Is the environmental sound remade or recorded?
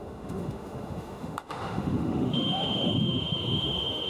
remade